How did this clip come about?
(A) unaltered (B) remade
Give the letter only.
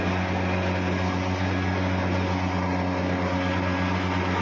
A